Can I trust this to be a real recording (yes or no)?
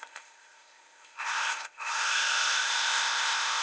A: no